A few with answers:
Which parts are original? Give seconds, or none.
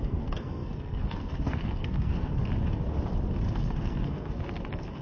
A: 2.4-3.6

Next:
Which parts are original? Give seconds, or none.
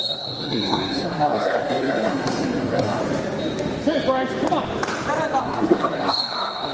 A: 3.0-5.4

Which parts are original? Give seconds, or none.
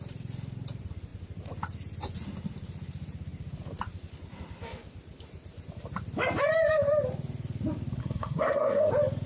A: 0.0-8.0; 8.9-9.3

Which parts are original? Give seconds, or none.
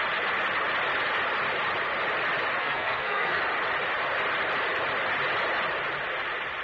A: 0.0-2.6; 3.4-6.6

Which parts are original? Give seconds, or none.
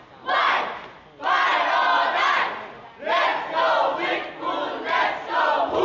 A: 0.0-5.8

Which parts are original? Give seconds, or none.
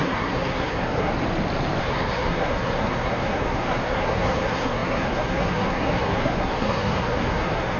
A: 1.1-1.8